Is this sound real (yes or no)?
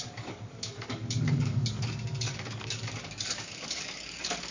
no